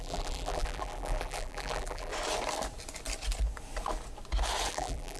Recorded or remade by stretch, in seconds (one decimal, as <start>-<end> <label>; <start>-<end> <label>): 0.0-2.1 remade; 2.1-4.7 recorded; 4.7-5.2 remade